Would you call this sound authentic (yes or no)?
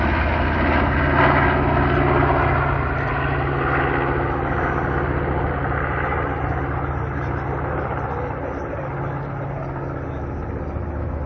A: yes